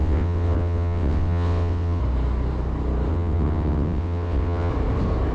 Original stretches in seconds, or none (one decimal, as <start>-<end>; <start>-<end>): 2.0-3.1; 4.7-5.3